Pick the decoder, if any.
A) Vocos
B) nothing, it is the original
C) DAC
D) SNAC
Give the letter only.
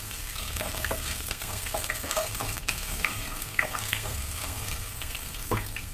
D